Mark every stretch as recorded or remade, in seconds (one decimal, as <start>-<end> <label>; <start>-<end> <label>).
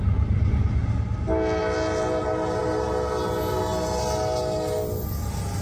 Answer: 0.0-5.6 recorded